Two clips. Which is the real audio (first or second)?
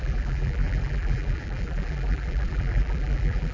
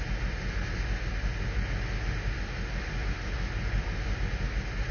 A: second